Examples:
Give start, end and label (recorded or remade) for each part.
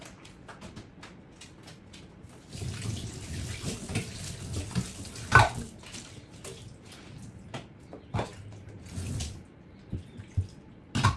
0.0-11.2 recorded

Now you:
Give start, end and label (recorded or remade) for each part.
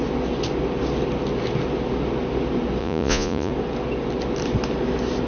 0.0-2.8 recorded; 2.8-3.5 remade; 3.5-5.3 recorded